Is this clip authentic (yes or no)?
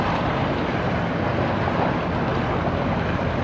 yes